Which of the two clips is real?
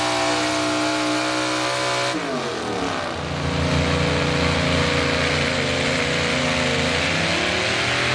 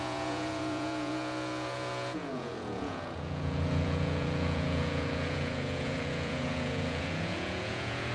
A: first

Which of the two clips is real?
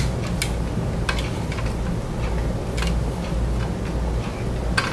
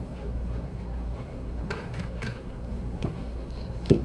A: first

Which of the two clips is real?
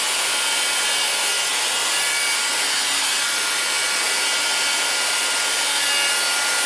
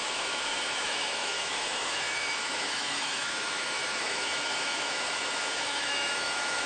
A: first